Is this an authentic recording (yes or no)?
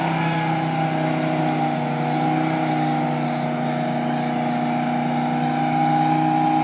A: yes